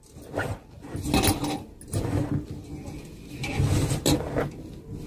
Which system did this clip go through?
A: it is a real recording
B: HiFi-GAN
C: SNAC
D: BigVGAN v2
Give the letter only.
A